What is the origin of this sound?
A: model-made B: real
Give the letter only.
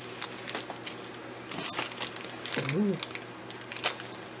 B